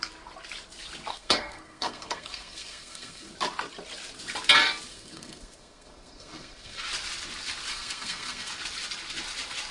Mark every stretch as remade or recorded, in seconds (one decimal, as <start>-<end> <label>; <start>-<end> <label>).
0.0-1.1 recorded; 1.1-3.3 remade; 3.3-4.9 recorded; 4.9-6.8 remade; 6.8-7.7 recorded; 7.7-8.5 remade; 8.5-9.7 recorded